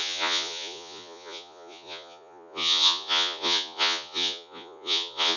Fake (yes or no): yes